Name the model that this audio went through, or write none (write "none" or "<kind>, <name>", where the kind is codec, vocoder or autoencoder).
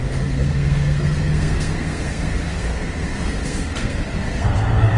codec, SNAC